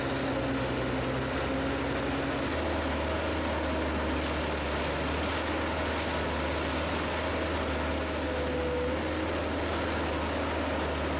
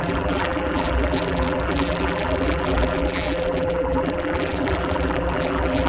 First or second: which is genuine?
first